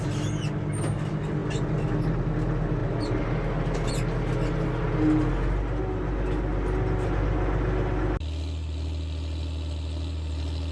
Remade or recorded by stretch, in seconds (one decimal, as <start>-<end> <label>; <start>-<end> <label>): 0.0-10.7 recorded